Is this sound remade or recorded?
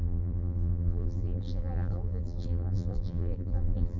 remade